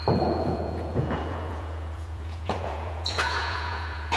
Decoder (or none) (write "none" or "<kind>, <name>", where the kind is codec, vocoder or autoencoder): vocoder, Vocos